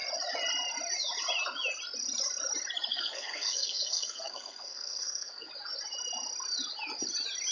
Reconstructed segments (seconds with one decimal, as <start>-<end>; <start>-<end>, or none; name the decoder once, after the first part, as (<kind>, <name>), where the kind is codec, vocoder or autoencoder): 2.9-5.5 (codec, SNAC)